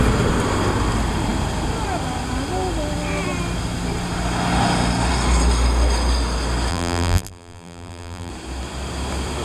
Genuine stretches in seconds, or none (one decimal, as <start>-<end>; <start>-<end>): 0.0-6.7; 8.3-9.4